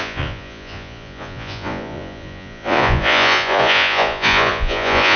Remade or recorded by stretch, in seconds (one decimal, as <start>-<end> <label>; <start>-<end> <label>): 0.0-5.2 remade